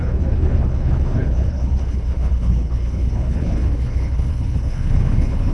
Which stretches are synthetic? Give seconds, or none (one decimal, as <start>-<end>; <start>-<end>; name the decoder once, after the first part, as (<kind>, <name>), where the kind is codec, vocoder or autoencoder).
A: 0.0-5.5 (codec, HILCodec)